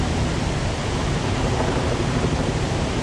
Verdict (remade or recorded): recorded